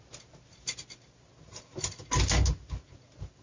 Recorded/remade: recorded